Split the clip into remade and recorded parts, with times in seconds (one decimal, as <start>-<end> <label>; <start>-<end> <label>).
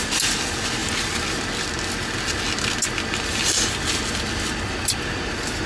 0.0-5.7 recorded